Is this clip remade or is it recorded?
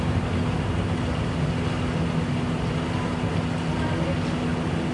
recorded